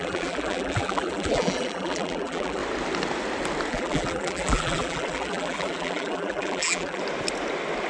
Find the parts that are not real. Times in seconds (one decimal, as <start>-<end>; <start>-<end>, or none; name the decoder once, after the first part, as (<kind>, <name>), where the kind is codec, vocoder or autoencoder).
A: 0.0-2.6 (vocoder, BigVGAN v2); 3.7-7.0